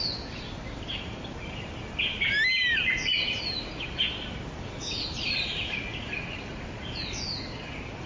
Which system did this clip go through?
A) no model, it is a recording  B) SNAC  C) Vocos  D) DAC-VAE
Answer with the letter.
A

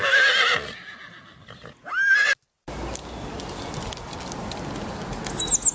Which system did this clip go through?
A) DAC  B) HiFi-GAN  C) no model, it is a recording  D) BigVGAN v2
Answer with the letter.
C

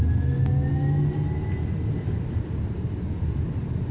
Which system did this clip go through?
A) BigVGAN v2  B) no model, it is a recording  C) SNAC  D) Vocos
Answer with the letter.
B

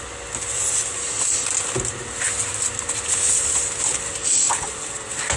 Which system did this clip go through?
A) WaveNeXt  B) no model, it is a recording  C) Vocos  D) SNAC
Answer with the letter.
B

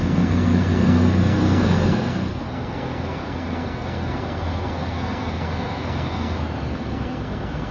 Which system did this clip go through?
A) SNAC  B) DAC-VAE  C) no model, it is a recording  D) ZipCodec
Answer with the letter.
A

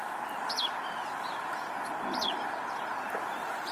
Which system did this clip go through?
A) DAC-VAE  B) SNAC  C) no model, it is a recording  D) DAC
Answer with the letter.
C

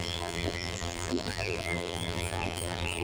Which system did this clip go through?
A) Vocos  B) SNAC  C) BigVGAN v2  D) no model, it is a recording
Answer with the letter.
C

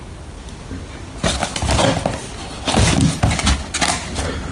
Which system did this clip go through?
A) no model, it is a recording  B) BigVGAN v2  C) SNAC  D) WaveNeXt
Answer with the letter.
A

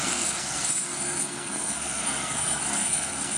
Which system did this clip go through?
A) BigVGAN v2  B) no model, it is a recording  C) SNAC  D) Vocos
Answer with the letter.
C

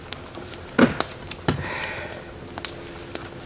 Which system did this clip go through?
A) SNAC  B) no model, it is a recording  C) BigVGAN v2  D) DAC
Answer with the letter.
B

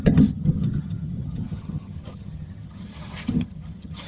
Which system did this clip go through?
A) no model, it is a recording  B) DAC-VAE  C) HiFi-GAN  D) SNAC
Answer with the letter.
C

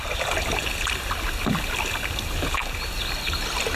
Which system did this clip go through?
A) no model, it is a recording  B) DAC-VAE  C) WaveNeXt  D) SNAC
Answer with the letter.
A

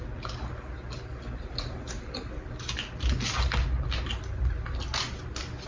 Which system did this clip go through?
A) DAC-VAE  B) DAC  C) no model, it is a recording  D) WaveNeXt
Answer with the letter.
C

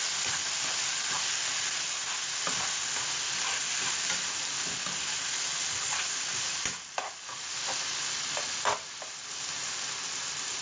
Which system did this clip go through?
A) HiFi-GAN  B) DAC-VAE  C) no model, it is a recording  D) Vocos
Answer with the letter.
C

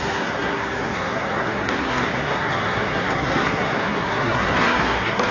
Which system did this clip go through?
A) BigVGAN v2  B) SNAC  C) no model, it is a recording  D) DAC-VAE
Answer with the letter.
B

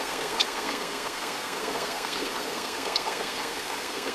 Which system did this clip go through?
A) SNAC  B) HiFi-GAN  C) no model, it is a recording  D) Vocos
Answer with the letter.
A